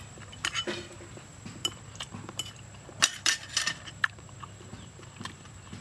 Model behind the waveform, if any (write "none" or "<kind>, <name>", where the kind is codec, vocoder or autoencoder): vocoder, BigVGAN v2